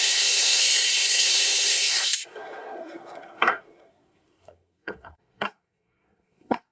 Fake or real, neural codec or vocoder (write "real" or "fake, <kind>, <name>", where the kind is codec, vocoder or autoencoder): fake, codec, SNAC